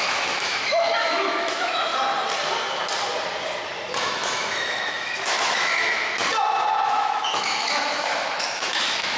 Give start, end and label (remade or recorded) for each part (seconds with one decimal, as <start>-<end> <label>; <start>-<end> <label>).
0.0-1.9 remade; 1.9-4.0 recorded; 4.0-6.2 remade; 6.2-6.8 recorded; 6.8-9.2 remade